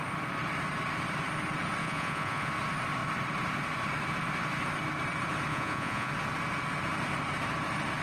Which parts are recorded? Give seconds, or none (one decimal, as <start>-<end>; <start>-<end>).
0.0-1.8; 2.5-5.5; 6.1-8.0